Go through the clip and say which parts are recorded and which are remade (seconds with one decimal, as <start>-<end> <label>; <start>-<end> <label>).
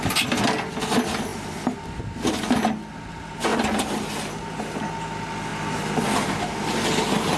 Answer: 0.0-7.4 recorded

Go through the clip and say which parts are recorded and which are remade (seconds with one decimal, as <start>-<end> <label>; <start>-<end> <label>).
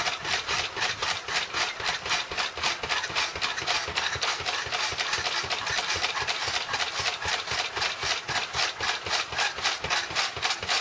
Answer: 0.0-3.9 recorded; 3.9-4.4 remade; 4.4-10.8 recorded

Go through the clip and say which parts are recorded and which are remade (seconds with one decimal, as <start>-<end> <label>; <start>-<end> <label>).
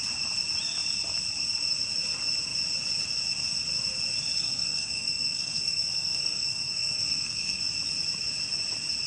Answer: 0.0-4.4 recorded; 4.4-7.6 remade; 7.6-9.1 recorded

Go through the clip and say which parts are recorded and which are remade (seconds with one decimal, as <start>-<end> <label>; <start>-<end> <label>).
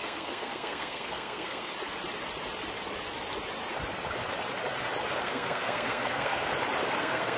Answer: 0.0-1.7 remade; 1.7-5.2 recorded; 5.2-6.5 remade; 6.5-7.0 recorded; 7.0-7.4 remade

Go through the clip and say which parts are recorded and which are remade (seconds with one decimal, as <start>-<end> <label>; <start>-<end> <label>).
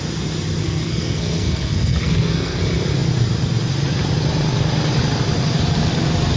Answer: 0.0-0.6 recorded; 0.6-2.6 remade; 2.6-6.4 recorded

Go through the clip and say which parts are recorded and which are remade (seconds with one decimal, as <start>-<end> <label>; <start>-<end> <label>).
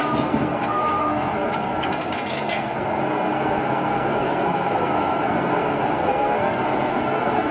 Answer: 0.0-7.5 remade